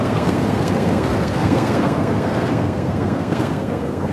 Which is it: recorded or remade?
remade